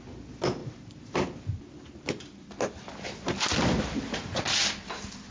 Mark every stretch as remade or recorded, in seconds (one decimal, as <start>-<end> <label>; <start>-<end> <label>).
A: 0.0-5.3 recorded

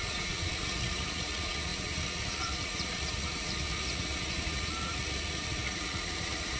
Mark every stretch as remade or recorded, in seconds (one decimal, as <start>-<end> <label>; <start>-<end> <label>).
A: 0.0-6.6 remade

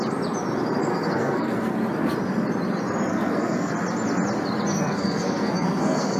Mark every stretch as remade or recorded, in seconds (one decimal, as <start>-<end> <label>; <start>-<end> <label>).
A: 0.0-0.9 recorded; 0.9-1.7 remade; 1.7-3.1 recorded; 3.1-3.7 remade; 3.7-4.7 recorded; 4.7-6.2 remade

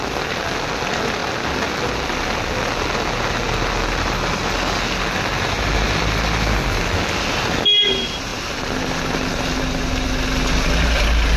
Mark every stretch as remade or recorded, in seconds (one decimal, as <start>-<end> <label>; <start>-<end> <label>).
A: 0.0-11.4 recorded

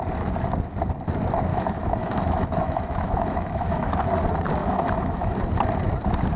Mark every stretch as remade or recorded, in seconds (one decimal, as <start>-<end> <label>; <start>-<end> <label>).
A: 0.0-1.5 recorded; 1.5-4.1 remade; 4.1-4.6 recorded; 4.6-5.4 remade; 5.4-6.4 recorded

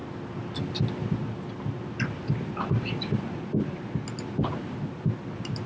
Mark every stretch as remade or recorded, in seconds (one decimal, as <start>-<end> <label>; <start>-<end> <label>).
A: 0.0-5.7 recorded

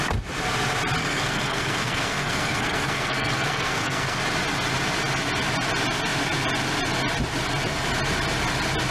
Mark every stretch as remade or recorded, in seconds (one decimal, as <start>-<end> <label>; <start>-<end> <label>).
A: 0.0-1.0 recorded; 1.0-4.2 remade; 4.2-8.9 recorded

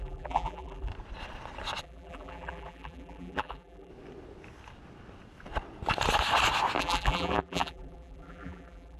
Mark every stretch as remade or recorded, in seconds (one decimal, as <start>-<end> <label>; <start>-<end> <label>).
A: 0.0-0.9 remade; 0.9-1.8 recorded; 1.8-3.9 remade; 3.9-6.8 recorded; 6.8-9.0 remade